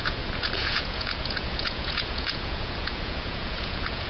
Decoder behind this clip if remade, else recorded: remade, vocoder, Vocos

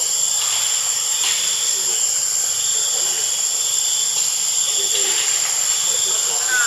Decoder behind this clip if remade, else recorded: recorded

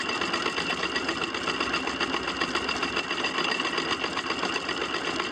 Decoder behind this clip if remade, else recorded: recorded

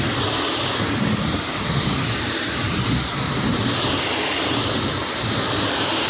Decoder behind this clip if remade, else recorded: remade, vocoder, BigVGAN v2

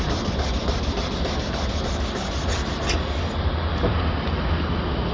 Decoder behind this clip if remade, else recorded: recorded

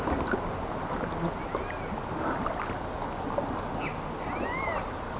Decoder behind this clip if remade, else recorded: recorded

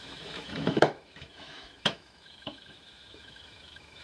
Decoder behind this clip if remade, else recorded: remade, autoencoder, DAC-VAE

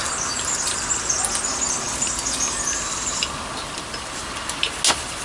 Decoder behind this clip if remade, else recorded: recorded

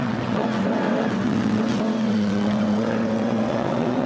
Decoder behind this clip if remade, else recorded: remade, vocoder, WaveNeXt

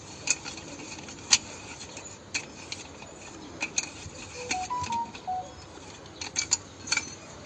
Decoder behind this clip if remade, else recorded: recorded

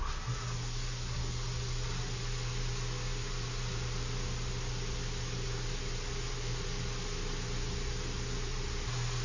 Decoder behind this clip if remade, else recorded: recorded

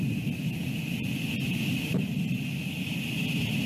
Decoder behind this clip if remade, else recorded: recorded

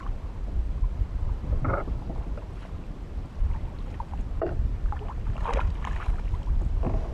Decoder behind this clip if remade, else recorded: recorded